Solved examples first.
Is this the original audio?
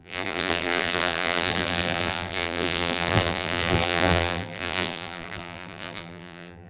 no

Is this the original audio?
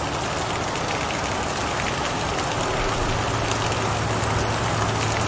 yes